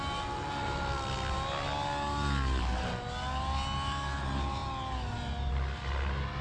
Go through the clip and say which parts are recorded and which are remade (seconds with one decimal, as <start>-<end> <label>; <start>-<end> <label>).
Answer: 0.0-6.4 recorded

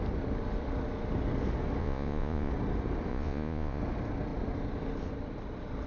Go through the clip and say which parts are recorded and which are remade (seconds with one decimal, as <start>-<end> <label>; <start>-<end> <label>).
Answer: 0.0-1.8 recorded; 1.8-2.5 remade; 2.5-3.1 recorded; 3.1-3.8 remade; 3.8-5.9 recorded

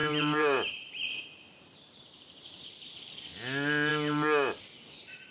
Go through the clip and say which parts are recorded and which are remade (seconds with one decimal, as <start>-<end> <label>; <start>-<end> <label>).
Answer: 0.0-3.2 remade; 3.2-5.3 recorded